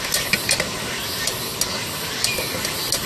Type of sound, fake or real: real